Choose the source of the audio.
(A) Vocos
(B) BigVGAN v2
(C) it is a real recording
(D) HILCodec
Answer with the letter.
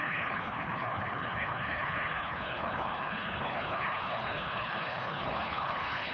D